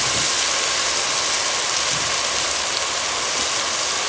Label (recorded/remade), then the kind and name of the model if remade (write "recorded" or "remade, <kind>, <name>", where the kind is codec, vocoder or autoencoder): recorded